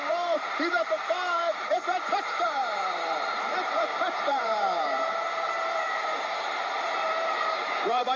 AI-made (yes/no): yes